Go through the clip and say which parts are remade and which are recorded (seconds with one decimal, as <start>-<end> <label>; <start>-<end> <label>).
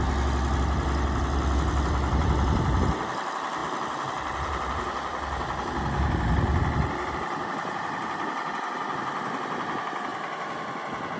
0.0-11.2 recorded